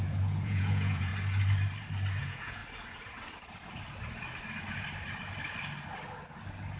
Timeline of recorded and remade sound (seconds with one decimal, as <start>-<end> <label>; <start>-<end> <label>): 0.0-1.1 remade; 1.1-2.2 recorded; 2.2-2.6 remade; 2.6-6.8 recorded